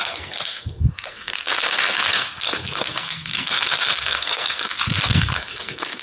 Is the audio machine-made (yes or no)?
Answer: yes